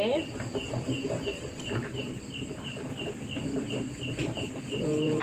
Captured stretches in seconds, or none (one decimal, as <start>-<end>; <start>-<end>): 0.0-1.3; 2.9-4.2